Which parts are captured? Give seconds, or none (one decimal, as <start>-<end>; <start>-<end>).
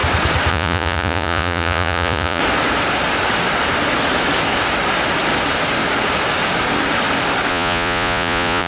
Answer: 0.0-0.5; 2.4-7.5